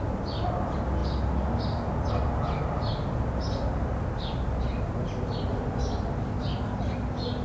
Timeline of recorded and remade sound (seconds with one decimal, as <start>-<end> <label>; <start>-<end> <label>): 0.0-7.4 recorded